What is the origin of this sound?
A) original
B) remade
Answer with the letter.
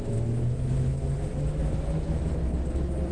B